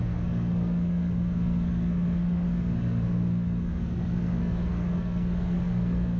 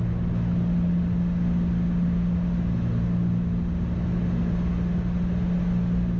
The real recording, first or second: second